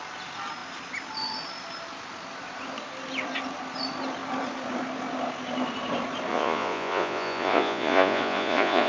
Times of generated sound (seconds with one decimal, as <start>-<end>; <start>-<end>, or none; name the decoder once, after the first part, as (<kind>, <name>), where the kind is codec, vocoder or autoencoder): 6.3-8.9 (vocoder, Vocos)